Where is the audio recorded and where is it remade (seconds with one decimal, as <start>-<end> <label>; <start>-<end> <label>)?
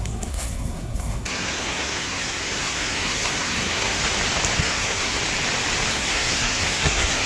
0.0-4.0 remade; 4.0-4.6 recorded; 4.6-5.2 remade; 5.2-5.9 recorded; 5.9-7.3 remade